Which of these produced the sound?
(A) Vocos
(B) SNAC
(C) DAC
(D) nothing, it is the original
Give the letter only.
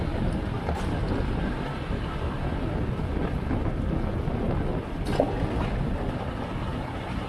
D